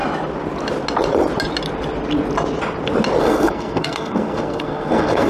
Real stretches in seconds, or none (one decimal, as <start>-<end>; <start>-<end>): 0.0-3.2